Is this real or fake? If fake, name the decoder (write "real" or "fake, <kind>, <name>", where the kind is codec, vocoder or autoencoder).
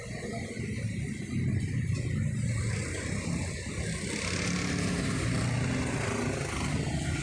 real